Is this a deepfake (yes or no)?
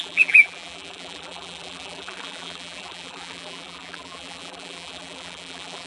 yes